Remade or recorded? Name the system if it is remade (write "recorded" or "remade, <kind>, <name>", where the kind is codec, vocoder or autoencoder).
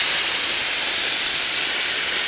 recorded